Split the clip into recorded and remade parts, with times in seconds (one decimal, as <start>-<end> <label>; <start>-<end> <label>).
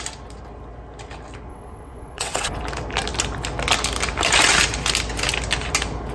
0.0-1.5 recorded; 1.5-2.6 remade; 2.6-6.1 recorded